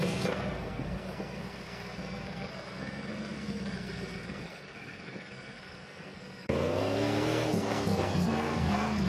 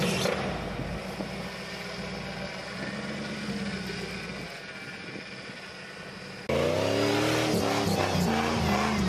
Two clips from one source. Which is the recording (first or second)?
second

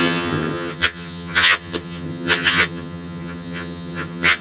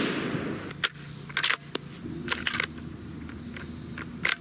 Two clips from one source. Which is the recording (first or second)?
second